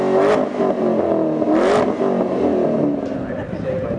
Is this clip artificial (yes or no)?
no